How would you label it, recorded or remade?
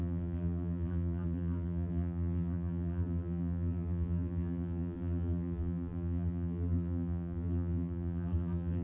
remade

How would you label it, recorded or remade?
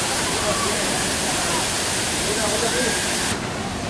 remade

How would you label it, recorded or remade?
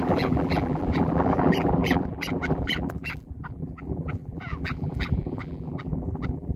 remade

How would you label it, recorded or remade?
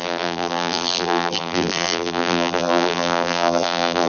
remade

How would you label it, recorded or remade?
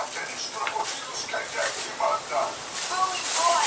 remade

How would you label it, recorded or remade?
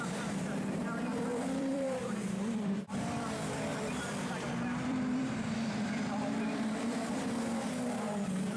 remade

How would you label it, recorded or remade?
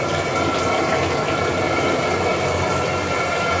recorded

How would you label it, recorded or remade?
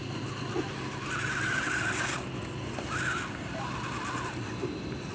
recorded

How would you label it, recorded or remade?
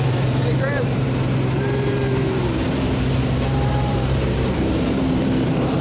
remade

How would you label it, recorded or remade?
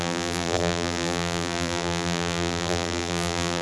remade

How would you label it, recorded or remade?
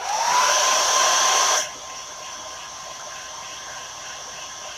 remade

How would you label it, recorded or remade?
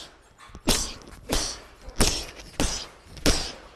recorded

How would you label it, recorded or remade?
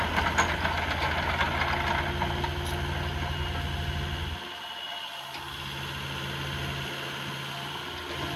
recorded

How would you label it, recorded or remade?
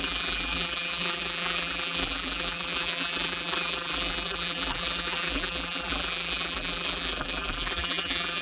remade